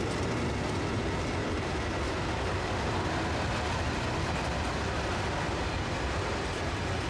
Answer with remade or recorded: recorded